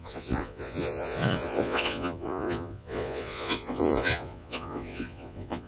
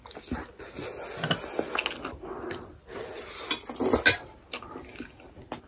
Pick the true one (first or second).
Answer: second